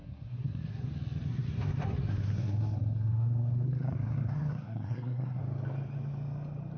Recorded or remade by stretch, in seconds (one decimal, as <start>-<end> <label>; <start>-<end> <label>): 0.0-0.9 remade; 0.9-1.3 recorded; 1.3-5.4 remade; 5.4-6.8 recorded